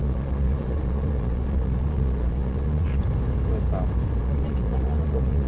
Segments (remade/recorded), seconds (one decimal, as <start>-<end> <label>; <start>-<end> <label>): 0.0-3.0 remade; 3.0-4.2 recorded; 4.2-5.5 remade